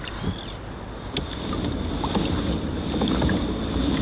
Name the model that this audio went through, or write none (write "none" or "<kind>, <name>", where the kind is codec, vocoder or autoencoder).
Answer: none